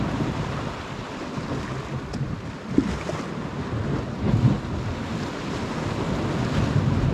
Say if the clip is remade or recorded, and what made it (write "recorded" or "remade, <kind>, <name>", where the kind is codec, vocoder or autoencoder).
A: recorded